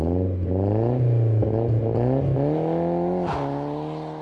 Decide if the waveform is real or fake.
real